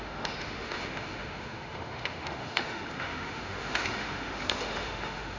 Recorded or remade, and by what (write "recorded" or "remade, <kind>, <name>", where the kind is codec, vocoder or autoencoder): remade, autoencoder, DAC-VAE